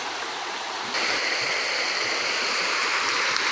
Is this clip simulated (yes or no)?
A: no